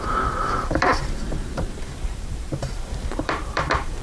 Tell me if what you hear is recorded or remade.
remade